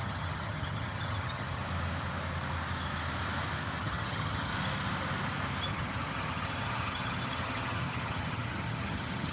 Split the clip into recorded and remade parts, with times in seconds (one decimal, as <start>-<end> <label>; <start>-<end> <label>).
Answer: 0.0-1.6 remade; 1.6-3.8 recorded; 3.8-4.5 remade; 4.5-5.7 recorded; 5.7-9.3 remade